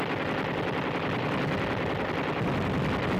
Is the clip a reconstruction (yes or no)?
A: no